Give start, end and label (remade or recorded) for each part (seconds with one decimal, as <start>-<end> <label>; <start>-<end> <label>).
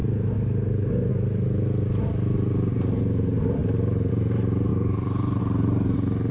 0.0-4.7 recorded; 4.7-5.4 remade; 5.4-6.3 recorded